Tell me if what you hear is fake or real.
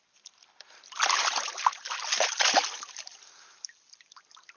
real